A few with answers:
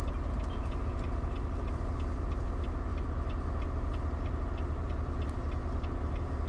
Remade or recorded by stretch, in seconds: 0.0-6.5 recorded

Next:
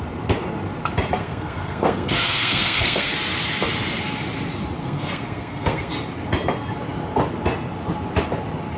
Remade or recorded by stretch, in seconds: 0.0-1.2 recorded; 1.2-3.1 remade; 3.1-4.8 recorded; 4.8-5.9 remade; 5.9-8.8 recorded

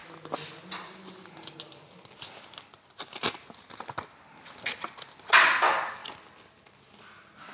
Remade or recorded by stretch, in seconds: 0.0-7.5 recorded

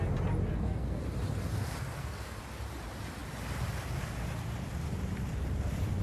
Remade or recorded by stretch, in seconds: 0.0-0.5 recorded; 0.5-1.0 remade; 1.0-1.9 recorded; 1.9-2.4 remade; 2.4-6.0 recorded

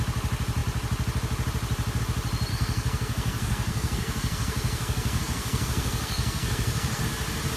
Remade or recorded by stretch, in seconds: 0.0-2.5 recorded; 2.5-7.0 remade; 7.0-7.6 recorded